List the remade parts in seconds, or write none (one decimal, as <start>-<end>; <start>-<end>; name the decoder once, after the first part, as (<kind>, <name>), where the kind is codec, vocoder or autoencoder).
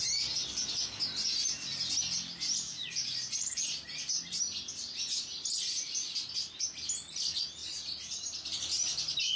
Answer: none